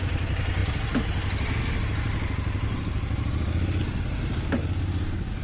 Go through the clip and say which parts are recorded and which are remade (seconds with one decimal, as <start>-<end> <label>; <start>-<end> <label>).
0.0-5.4 recorded